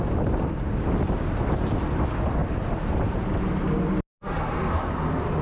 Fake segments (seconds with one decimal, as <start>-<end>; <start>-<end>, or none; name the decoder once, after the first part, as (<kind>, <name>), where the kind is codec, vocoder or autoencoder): none